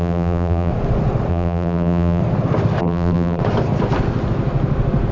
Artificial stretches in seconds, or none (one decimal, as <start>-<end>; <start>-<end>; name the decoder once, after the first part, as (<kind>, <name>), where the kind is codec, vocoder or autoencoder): 0.0-0.7 (vocoder, BigVGAN v2); 1.3-2.2; 2.8-3.4